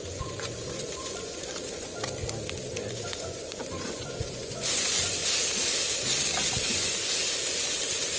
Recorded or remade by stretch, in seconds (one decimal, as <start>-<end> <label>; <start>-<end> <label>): 0.0-1.9 remade; 1.9-2.9 recorded; 2.9-5.2 remade; 5.2-6.6 recorded; 6.6-8.2 remade